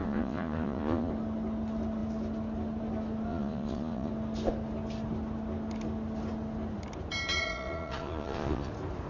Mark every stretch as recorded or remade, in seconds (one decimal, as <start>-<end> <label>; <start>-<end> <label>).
0.0-1.1 remade; 1.1-3.3 recorded; 3.3-4.1 remade; 4.1-7.3 recorded; 7.3-8.7 remade; 8.7-9.1 recorded